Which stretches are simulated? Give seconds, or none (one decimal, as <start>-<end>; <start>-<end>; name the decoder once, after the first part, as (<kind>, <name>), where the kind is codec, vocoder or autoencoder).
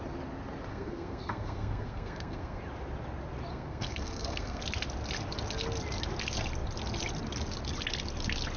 0.7-2.6 (codec, SNAC); 3.5-4.6